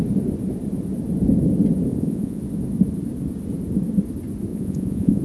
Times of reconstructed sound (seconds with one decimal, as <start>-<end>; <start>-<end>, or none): 1.9-2.4; 4.5-5.2